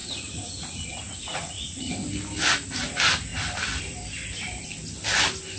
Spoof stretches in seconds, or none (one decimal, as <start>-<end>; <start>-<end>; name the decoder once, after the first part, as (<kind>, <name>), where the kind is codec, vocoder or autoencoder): 0.0-1.9 (vocoder, Vocos)